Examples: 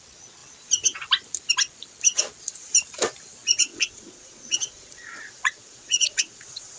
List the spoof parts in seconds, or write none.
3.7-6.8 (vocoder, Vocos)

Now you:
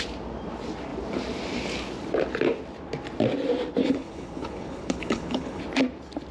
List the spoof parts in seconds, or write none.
3.8-5.6 (codec, HILCodec)

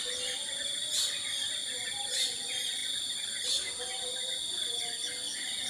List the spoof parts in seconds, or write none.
none

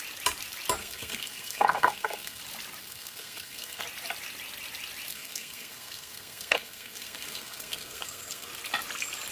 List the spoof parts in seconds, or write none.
0.8-2.4 (codec, SNAC); 2.8-3.8; 5.1-8.5

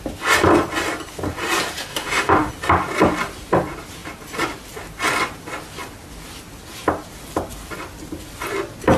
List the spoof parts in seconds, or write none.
1.9-2.5 (autoencoder, DAC-VAE)